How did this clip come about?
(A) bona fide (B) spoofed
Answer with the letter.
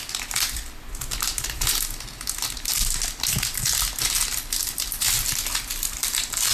A